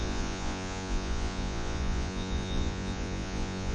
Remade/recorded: remade